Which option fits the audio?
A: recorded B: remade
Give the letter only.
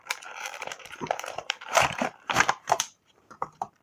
B